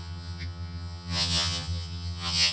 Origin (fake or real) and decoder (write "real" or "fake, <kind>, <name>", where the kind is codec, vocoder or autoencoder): fake, vocoder, HiFi-GAN